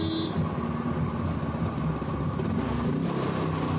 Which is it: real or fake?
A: real